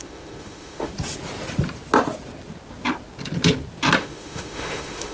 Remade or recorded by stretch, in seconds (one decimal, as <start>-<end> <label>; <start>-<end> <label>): 0.0-0.9 remade; 0.9-4.0 recorded; 4.0-5.1 remade